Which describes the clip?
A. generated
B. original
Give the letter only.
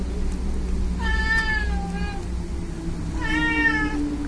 B